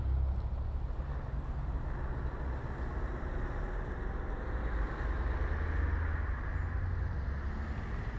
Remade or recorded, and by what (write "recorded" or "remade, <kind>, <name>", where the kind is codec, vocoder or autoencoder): recorded